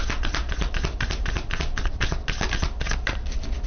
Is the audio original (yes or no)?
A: yes